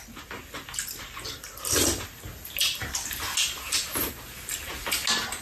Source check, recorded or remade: recorded